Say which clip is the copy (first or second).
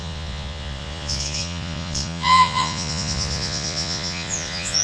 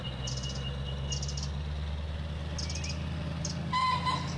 first